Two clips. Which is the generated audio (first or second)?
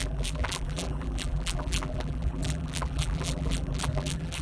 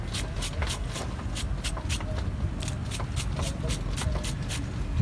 first